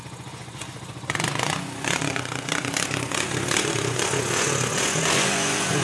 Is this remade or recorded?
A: remade